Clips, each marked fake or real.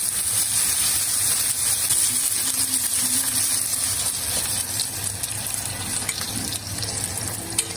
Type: real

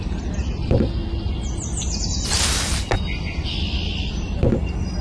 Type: real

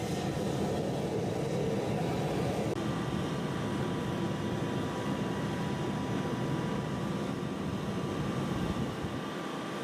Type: real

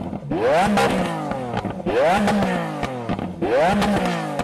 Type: real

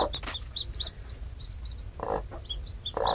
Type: real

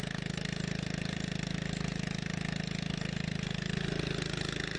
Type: real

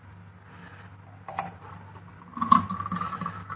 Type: real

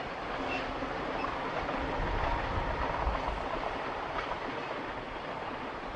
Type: real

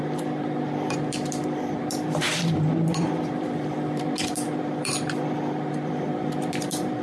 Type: fake